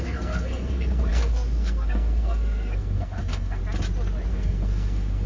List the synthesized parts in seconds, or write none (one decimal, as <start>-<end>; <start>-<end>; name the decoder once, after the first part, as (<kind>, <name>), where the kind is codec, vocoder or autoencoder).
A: 0.0-3.6 (codec, SNAC); 4.3-5.3

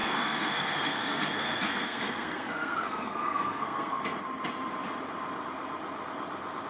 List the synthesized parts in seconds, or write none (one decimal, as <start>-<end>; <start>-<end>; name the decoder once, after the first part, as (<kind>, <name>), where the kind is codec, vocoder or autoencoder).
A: 0.0-4.0 (codec, SNAC)

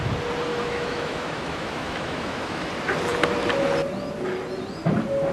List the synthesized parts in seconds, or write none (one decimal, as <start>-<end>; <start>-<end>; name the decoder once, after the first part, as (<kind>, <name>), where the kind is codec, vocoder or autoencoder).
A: 0.5-2.7 (autoencoder, DAC-VAE)

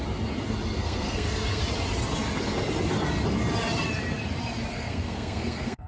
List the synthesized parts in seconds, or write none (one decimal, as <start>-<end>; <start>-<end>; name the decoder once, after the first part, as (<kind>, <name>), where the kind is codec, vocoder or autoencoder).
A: 0.8-1.6 (codec, SNAC); 4.7-5.9

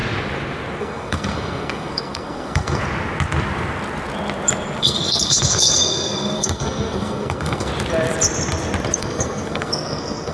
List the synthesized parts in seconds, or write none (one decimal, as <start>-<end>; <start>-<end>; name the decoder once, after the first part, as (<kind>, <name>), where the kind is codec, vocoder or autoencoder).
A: 0.8-2.8 (codec, SNAC); 4.8-7.7; 9.0-10.3

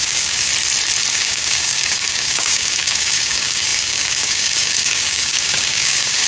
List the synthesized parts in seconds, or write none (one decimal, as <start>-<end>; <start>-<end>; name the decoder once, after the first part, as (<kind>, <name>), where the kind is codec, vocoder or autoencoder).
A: 0.0-0.5 (codec, DAC); 1.1-6.3

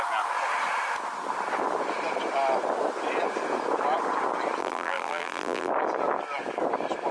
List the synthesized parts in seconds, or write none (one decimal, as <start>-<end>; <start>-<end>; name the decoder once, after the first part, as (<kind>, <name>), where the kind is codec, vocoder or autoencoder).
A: 4.6-5.7 (vocoder, BigVGAN v2)